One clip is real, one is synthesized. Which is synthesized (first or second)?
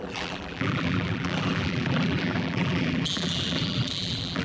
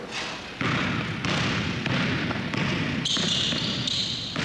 first